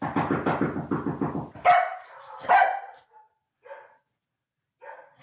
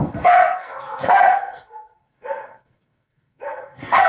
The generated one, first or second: second